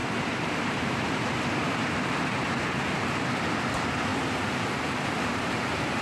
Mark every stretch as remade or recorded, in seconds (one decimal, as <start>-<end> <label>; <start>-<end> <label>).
0.0-3.6 remade; 3.6-4.1 recorded; 4.1-6.0 remade